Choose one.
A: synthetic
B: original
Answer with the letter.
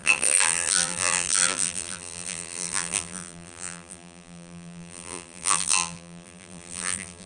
A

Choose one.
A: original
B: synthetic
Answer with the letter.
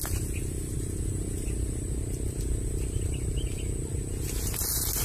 A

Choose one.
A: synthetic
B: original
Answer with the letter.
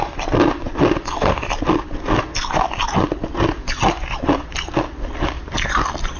B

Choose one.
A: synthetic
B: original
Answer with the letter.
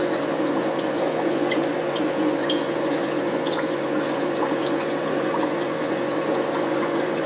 A